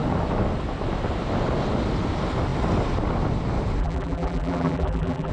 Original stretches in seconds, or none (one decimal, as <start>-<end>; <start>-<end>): 0.0-3.8